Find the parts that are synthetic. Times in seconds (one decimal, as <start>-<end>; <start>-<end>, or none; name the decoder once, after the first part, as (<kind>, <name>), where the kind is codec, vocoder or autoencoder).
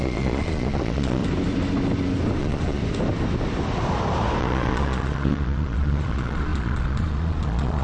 0.0-1.2 (vocoder, Vocos); 2.4-2.8; 4.4-7.8